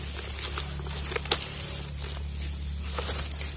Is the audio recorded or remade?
recorded